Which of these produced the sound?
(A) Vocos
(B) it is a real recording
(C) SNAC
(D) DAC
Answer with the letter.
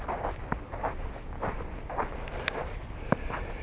B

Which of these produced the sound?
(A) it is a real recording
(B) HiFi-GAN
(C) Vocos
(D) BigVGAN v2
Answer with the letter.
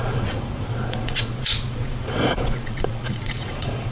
C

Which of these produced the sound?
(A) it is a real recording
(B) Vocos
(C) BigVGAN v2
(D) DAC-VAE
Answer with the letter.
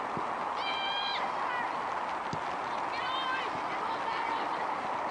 A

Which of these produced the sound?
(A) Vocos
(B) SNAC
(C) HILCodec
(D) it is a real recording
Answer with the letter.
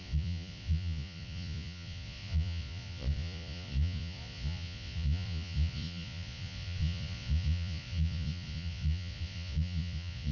A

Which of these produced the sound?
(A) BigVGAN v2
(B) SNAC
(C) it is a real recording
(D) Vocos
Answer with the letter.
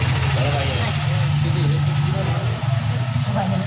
C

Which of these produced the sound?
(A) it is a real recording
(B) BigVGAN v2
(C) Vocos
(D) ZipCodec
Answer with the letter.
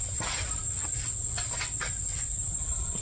A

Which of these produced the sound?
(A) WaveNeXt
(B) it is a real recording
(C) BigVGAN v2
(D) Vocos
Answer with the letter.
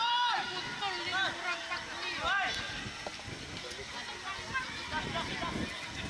B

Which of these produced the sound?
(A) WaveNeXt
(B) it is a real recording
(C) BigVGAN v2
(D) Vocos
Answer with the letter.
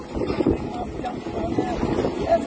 B